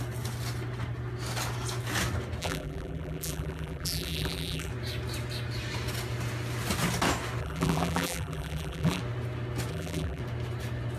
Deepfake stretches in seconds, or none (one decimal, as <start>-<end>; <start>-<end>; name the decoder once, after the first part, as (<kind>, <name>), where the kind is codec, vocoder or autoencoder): 2.4-4.7 (vocoder, BigVGAN v2); 7.4-9.0; 9.7-10.2